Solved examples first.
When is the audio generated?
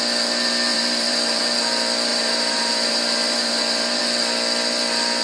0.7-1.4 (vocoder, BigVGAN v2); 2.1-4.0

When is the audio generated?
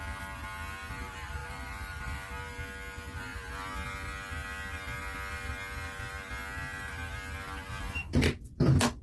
1.4-2.3 (vocoder, BigVGAN v2)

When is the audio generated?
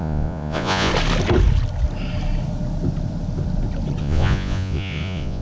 0.0-0.9 (vocoder, Vocos); 4.0-5.4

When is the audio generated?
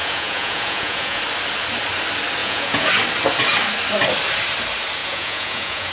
0.0-1.2 (vocoder, Vocos); 2.4-2.9; 5.0-5.9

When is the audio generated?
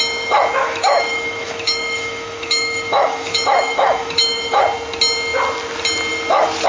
0.6-4.6 (autoencoder, DAC-VAE)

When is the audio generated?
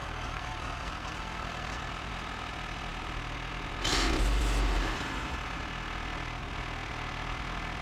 0.0-1.9 (codec, SNAC)